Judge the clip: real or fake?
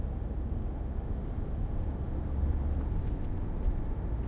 real